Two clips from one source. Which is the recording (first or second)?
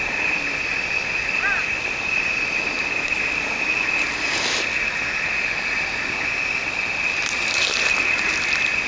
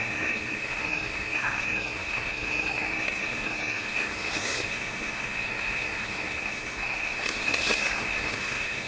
first